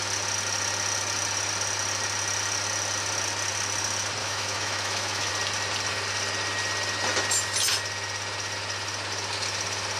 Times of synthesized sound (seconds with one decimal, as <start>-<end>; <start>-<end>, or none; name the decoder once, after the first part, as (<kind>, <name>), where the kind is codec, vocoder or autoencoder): 4.2-5.3 (autoencoder, DAC-VAE)